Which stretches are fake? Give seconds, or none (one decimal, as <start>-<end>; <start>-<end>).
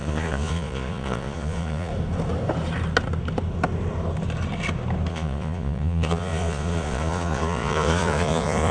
0.0-1.9; 5.1-8.7